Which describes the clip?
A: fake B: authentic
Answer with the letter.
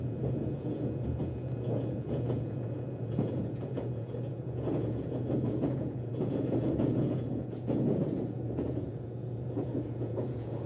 A